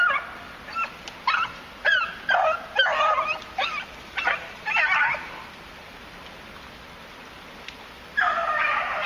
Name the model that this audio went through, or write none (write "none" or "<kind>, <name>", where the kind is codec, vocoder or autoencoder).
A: none